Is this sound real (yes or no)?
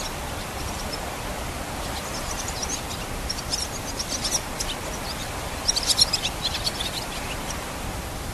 no